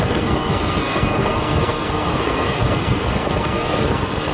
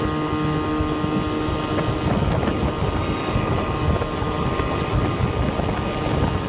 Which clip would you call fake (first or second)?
first